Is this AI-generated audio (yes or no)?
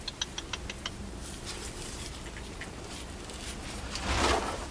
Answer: no